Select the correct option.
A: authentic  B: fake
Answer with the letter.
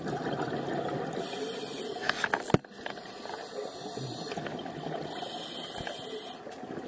A